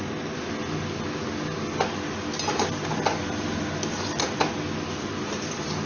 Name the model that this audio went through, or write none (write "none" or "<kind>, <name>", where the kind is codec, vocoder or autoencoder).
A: none